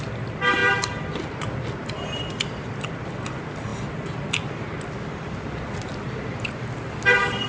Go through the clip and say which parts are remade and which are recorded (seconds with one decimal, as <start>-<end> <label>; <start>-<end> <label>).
0.0-7.5 recorded